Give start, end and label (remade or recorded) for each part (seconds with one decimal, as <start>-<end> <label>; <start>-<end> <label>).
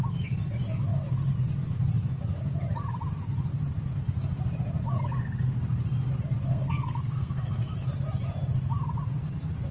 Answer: 0.0-6.5 recorded; 6.5-7.7 remade; 7.7-9.7 recorded